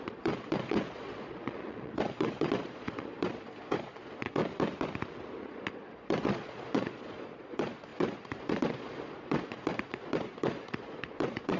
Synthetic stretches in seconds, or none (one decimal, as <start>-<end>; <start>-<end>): 0.0-4.4; 5.4-11.6